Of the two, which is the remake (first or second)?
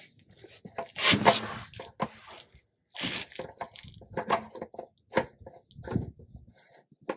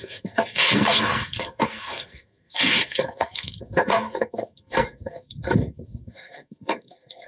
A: second